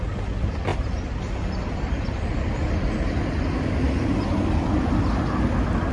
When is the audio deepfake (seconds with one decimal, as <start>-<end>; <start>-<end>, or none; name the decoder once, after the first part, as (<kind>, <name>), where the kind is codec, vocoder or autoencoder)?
none